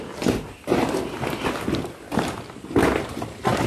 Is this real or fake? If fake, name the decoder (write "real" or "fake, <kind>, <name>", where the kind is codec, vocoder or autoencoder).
real